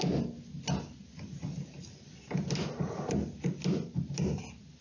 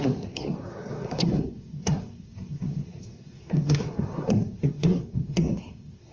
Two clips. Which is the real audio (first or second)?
first